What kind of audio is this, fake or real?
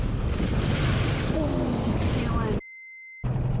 real